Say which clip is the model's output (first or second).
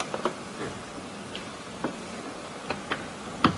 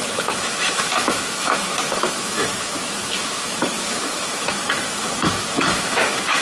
second